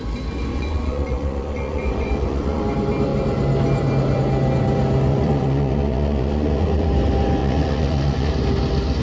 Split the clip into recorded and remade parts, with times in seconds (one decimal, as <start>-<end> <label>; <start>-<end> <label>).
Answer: 0.0-0.5 recorded; 0.5-2.6 remade; 2.6-5.1 recorded; 5.1-6.9 remade; 6.9-7.4 recorded; 7.4-8.3 remade; 8.3-9.0 recorded